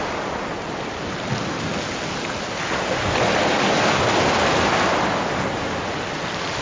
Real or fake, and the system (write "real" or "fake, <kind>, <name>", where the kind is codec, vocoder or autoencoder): real